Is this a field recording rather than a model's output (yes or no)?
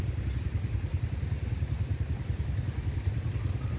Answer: yes